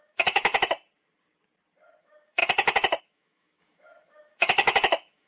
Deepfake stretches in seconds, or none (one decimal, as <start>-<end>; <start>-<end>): 0.0-0.5; 2.0-2.4; 3.0-5.3